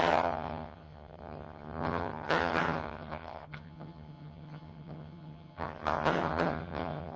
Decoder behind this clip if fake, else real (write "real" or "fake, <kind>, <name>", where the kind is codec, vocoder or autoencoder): fake, vocoder, HiFi-GAN